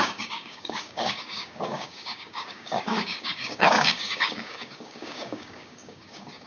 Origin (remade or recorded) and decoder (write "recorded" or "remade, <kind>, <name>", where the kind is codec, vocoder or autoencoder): remade, codec, DAC